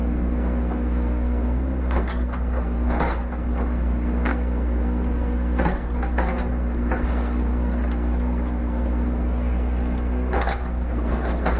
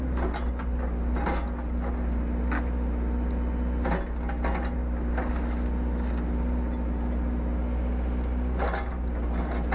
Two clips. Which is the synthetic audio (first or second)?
first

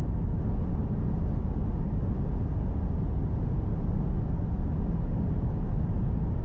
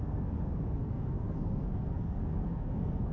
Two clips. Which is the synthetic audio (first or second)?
second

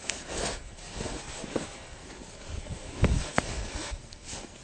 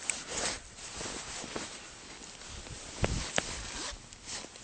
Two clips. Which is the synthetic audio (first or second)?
first